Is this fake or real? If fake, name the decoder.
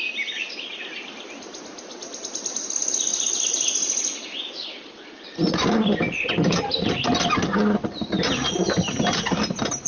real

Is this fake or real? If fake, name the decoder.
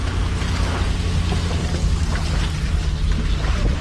real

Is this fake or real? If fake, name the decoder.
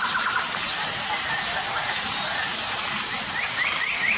real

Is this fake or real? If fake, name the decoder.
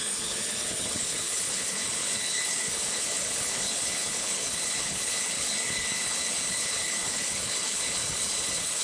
fake, codec, HILCodec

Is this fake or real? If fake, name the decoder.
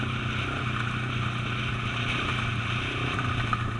real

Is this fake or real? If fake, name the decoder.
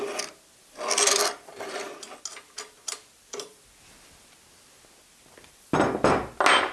real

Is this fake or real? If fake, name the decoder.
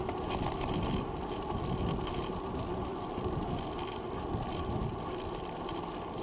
real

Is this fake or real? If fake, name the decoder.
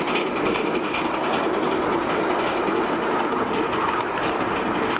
real